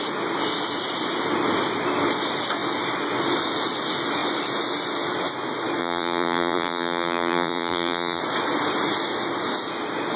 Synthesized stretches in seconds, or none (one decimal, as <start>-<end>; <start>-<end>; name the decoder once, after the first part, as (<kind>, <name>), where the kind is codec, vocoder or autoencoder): 5.8-8.2 (vocoder, BigVGAN v2)